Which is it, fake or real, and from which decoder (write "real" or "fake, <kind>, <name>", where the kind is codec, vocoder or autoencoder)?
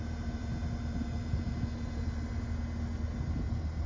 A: real